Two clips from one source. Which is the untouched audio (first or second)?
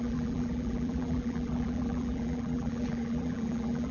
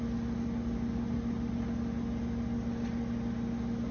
second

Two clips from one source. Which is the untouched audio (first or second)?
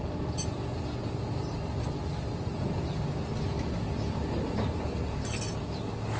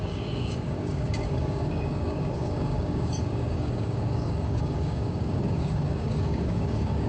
first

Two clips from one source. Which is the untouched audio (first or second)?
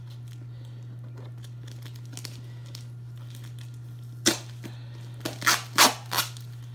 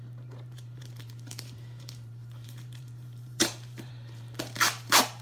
first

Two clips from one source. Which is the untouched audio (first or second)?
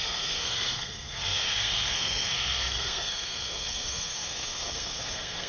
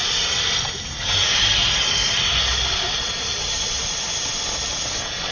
second